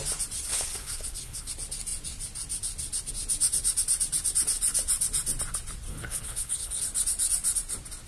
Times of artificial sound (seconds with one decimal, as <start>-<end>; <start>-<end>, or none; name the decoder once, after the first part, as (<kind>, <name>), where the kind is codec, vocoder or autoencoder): 0.5-1.5 (codec, HILCodec); 5.9-6.8